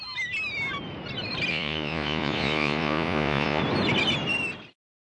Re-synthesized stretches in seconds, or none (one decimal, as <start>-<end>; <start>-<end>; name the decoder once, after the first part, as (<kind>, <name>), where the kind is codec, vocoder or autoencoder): 1.5-3.6 (vocoder, Vocos)